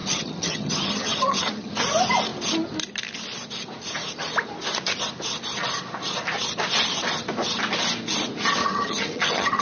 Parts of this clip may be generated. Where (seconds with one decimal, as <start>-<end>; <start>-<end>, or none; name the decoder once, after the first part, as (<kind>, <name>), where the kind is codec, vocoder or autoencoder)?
0.0-1.7 (vocoder, HiFi-GAN); 8.6-9.6